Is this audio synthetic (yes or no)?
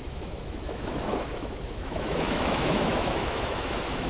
yes